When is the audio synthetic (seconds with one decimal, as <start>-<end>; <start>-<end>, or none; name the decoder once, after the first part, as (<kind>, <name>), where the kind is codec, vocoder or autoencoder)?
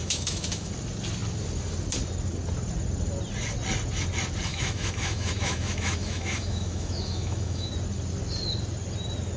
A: 0.0-0.7 (autoencoder, DAC-VAE); 4.5-7.7